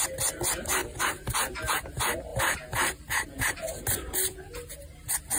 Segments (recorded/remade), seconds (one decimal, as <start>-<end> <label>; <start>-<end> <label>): 0.0-0.8 recorded; 0.8-1.7 remade; 1.7-2.3 recorded; 2.3-3.7 remade; 3.7-5.4 recorded